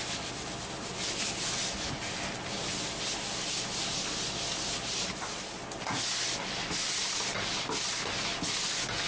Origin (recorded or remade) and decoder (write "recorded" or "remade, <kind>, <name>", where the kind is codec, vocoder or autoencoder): recorded